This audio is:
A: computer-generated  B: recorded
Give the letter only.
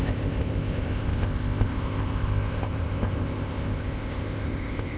A